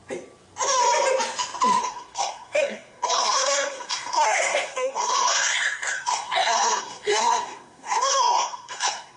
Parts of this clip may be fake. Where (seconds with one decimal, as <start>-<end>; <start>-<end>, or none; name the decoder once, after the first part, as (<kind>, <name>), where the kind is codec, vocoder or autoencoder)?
1.8-9.2 (codec, SNAC)